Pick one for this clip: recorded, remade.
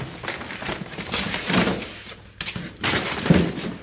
recorded